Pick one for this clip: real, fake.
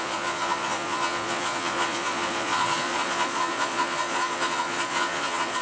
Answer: fake